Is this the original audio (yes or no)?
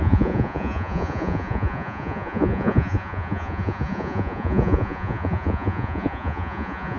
no